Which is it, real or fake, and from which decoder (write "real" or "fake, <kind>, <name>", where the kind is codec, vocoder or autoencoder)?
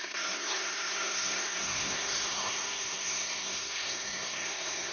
fake, codec, SNAC